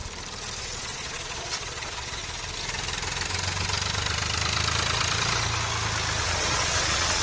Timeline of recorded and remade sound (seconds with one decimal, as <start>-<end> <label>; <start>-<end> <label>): 0.0-0.6 recorded; 0.6-2.2 remade; 2.2-6.2 recorded; 6.2-7.2 remade